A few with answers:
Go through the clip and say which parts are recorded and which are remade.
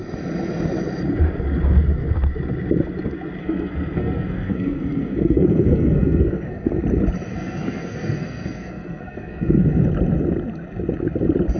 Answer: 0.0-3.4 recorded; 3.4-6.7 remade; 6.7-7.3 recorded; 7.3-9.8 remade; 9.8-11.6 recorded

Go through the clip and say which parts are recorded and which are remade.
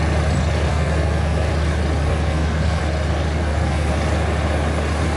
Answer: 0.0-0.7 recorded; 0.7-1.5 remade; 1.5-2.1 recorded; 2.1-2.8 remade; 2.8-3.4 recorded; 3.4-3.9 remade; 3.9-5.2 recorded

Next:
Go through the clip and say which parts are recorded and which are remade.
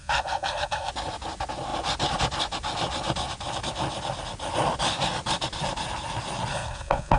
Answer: 0.0-0.9 remade; 0.9-6.5 recorded; 6.5-7.2 remade